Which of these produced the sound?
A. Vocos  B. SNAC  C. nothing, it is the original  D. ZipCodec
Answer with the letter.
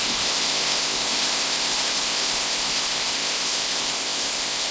D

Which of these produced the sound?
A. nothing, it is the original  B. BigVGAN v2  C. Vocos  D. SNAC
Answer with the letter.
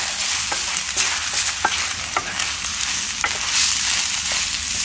A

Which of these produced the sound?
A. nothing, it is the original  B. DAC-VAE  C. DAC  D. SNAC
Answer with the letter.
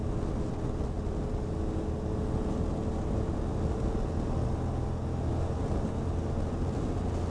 A